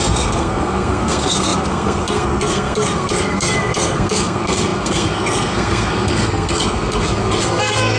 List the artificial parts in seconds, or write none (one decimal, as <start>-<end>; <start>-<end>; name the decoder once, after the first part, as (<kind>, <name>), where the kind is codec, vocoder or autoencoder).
0.0-8.0 (codec, SNAC)